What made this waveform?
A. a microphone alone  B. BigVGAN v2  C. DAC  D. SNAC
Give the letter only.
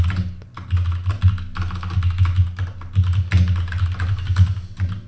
A